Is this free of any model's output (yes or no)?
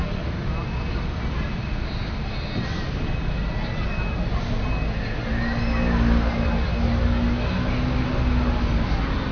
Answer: yes